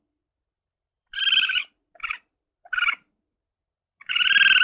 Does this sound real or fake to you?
fake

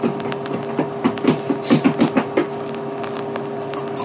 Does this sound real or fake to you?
real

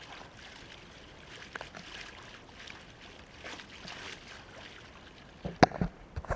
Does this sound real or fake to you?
real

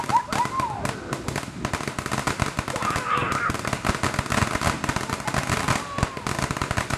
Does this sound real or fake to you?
real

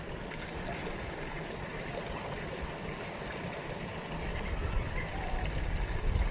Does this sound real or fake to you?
fake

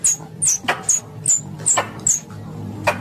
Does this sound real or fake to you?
real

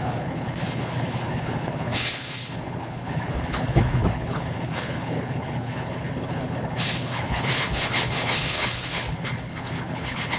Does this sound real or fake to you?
fake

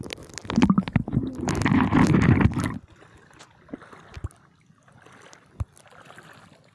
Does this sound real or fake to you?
real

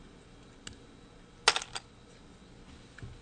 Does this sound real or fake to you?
real